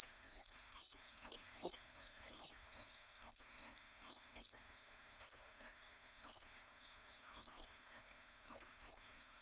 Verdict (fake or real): fake